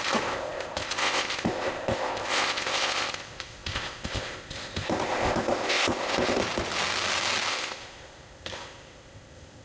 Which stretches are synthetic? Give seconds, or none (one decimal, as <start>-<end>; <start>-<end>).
0.0-6.4; 7.5-9.6